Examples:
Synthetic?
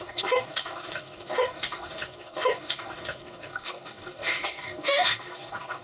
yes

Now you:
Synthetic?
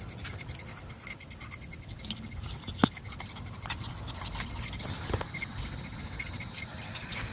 no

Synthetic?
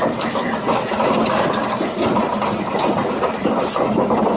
no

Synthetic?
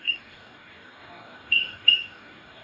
yes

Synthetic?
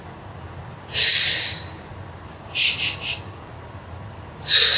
no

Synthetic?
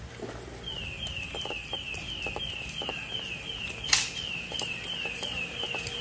no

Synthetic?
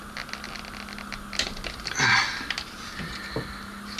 no